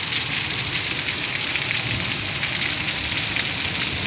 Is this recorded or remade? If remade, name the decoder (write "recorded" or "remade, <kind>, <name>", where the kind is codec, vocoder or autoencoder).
recorded